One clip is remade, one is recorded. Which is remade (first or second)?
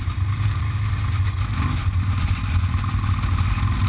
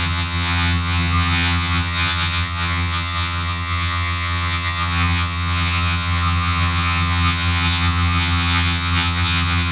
second